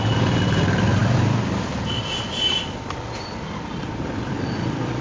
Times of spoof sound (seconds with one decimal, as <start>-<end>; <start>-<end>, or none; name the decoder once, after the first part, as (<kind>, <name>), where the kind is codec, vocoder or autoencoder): none